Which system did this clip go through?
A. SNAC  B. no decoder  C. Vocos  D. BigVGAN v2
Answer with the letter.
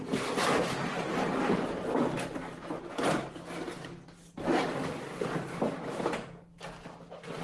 B